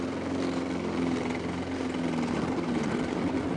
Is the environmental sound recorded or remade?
recorded